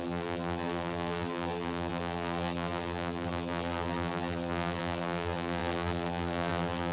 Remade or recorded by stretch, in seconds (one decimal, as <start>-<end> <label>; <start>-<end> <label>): 0.0-6.9 remade